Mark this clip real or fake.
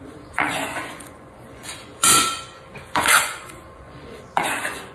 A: fake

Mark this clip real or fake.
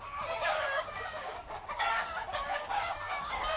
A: fake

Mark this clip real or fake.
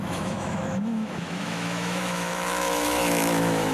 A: fake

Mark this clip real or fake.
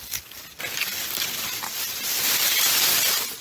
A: fake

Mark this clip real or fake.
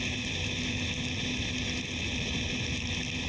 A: real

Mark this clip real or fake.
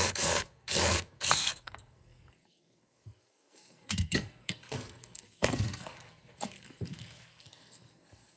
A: fake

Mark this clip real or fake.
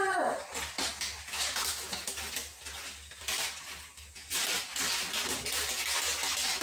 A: real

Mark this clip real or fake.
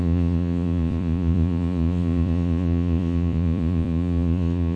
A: fake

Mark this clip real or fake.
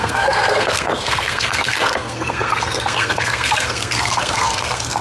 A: fake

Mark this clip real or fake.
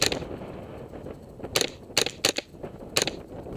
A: real